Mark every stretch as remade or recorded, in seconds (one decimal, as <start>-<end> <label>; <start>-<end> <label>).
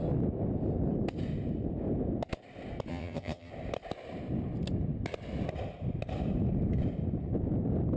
0.0-2.9 recorded; 2.9-3.5 remade; 3.5-8.0 recorded